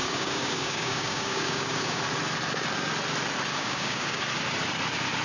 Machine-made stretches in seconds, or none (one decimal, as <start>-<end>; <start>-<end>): 0.0-2.0; 3.5-4.2

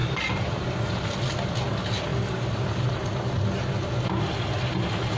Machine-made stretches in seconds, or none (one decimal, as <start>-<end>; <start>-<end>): 0.0-1.0; 2.1-3.0

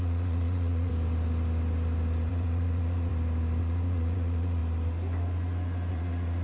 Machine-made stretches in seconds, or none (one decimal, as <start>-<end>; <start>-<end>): 0.0-0.9; 2.3-3.1; 3.6-4.6; 5.9-6.4

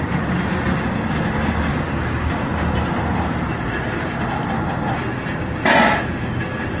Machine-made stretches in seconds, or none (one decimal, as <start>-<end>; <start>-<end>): 1.7-2.3

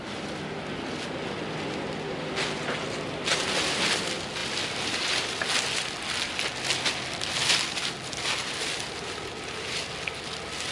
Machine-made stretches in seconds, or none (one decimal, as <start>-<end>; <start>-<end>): none